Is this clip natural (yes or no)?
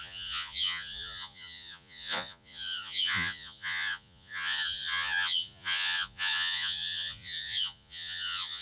no